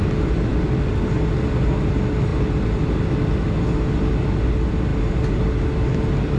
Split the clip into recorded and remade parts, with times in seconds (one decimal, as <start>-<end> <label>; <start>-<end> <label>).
0.0-6.4 recorded